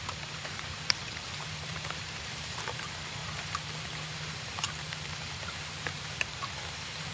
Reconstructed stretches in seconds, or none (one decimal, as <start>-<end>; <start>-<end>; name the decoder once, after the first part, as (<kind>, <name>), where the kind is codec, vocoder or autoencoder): 0.0-7.1 (vocoder, BigVGAN v2)